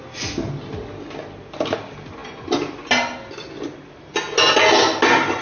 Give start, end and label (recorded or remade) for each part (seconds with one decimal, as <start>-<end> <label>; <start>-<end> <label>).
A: 0.0-5.4 recorded